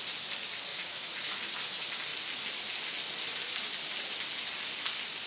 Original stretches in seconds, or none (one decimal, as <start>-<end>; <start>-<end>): 0.0-0.7; 1.4-5.3